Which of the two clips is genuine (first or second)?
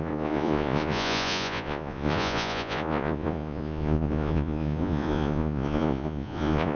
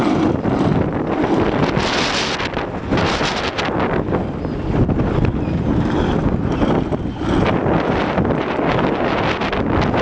second